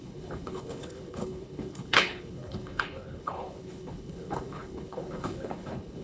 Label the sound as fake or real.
fake